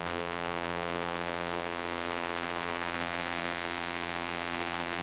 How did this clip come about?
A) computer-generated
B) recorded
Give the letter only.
A